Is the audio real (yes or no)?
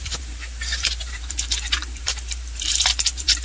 no